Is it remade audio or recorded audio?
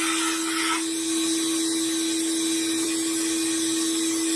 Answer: recorded